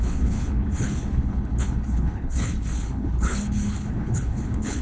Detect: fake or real fake